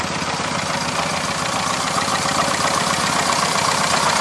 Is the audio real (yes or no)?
yes